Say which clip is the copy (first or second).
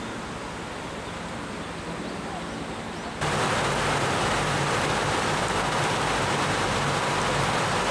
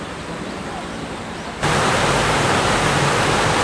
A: second